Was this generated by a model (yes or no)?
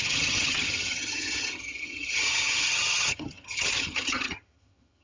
yes